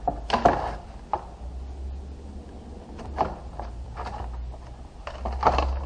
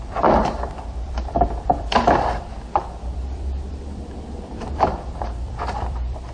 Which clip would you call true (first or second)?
first